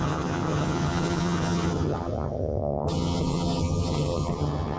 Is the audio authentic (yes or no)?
no